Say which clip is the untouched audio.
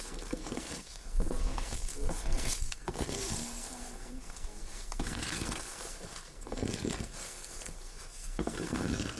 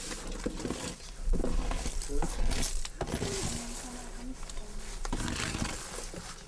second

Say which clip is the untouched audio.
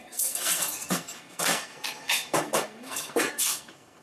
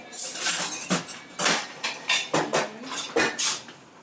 second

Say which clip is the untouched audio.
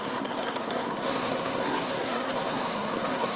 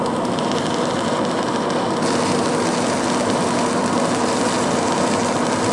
second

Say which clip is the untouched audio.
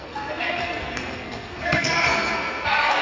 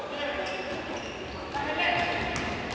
second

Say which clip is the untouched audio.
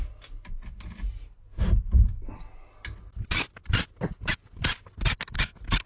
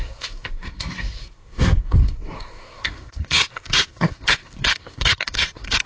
first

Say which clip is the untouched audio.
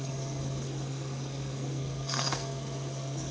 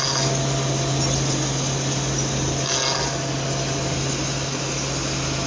second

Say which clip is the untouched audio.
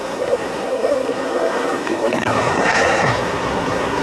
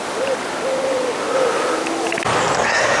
second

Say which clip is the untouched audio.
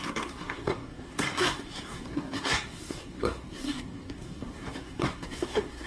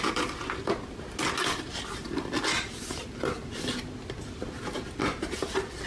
second